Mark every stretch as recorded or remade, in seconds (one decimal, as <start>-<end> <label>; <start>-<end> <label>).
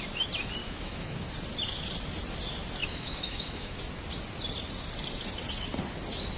0.0-0.6 recorded; 0.6-1.3 remade; 1.3-2.8 recorded; 2.8-3.8 remade; 3.8-6.4 recorded